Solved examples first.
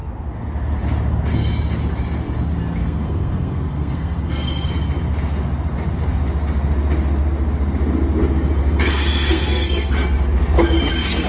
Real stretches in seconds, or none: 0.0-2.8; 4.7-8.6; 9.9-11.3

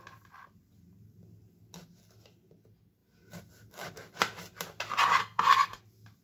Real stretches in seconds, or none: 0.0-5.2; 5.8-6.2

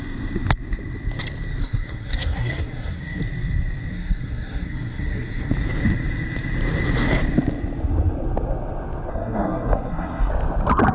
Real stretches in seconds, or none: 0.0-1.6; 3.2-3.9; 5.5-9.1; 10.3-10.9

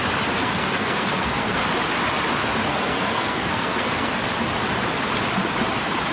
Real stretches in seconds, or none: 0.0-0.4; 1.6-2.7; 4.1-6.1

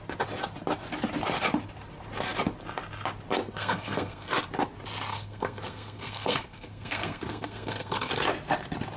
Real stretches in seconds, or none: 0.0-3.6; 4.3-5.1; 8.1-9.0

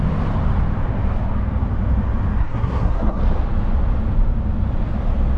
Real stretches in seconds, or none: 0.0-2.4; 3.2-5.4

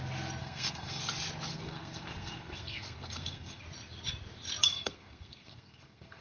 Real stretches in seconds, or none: 0.0-0.4; 1.0-1.5; 3.6-4.7

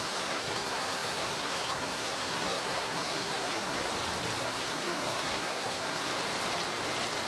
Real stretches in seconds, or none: 3.9-4.4; 6.1-7.3